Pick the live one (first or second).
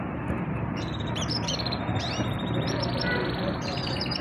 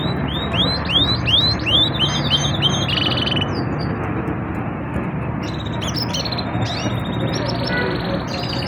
second